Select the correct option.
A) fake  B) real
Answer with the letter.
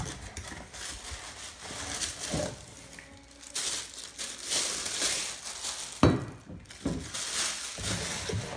B